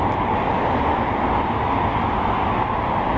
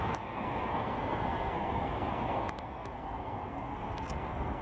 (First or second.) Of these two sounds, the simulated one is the second